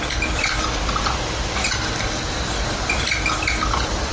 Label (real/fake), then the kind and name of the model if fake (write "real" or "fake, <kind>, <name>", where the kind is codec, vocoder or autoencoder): real